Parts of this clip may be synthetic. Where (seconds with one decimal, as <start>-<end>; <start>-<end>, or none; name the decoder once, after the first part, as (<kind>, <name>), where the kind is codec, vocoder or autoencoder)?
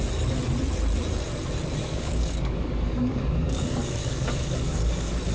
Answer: 1.8-5.3 (codec, DAC)